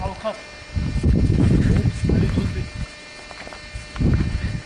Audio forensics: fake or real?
real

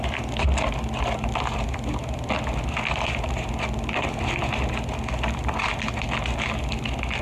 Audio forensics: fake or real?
real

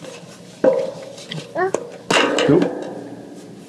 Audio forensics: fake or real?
real